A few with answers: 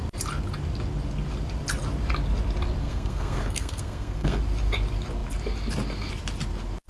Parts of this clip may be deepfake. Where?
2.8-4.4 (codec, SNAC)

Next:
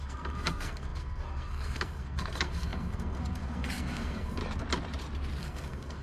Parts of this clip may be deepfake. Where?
0.0-4.4 (codec, SNAC); 5.4-6.0

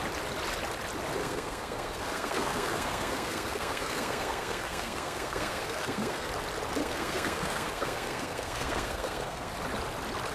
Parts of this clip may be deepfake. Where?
1.2-6.3 (codec, SNAC); 6.8-9.5